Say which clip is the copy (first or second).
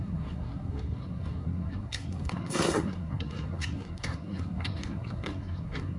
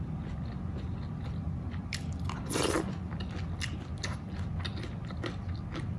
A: first